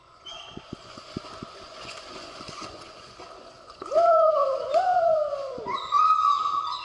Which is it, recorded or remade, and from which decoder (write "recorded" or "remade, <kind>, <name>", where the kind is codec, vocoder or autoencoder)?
remade, vocoder, Vocos